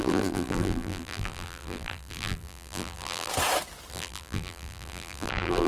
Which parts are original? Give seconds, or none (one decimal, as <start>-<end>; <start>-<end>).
3.3-3.9